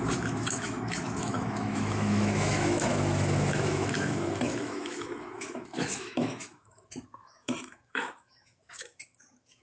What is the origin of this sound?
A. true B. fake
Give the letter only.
B